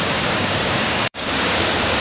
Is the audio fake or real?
fake